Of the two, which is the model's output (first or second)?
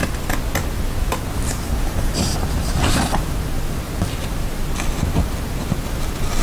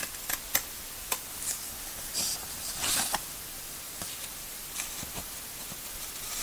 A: second